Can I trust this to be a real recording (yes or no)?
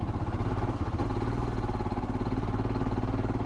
yes